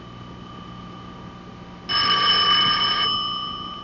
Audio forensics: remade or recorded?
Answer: recorded